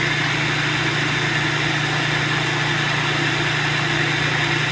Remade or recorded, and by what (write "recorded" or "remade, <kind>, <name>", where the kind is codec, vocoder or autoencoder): recorded